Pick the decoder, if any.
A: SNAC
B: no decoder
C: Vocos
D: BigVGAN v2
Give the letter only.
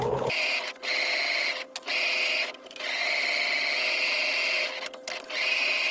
B